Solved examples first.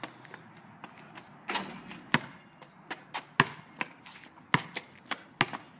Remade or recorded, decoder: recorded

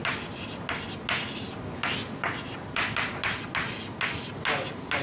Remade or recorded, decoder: recorded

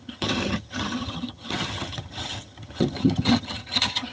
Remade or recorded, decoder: remade, vocoder, HiFi-GAN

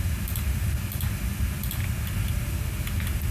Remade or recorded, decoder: recorded